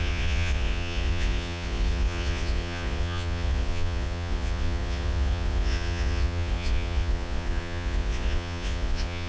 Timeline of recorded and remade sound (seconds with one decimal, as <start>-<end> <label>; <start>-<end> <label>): 0.0-9.3 remade